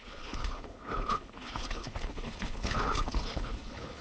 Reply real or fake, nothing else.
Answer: fake